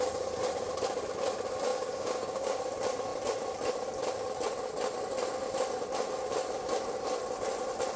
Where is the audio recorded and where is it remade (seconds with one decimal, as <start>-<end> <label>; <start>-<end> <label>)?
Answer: 0.0-1.7 recorded; 1.7-2.6 remade; 2.6-8.0 recorded